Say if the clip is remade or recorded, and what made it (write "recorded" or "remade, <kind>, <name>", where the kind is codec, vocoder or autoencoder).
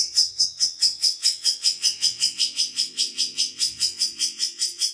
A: remade, vocoder, WaveNeXt